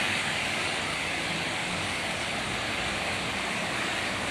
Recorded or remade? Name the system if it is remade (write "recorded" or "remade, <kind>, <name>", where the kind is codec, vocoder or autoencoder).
remade, codec, DAC